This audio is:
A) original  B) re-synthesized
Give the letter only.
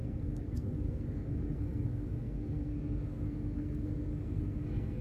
B